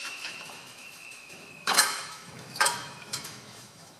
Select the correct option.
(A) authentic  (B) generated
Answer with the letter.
B